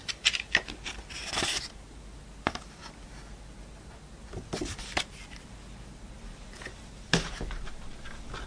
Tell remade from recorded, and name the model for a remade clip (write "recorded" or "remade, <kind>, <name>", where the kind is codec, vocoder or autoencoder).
recorded